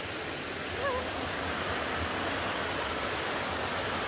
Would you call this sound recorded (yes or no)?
yes